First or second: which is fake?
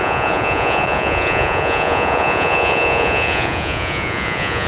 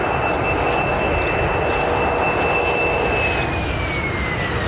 first